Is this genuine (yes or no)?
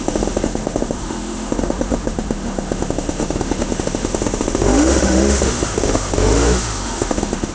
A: no